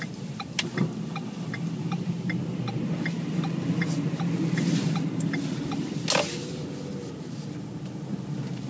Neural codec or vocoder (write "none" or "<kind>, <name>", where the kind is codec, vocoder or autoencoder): none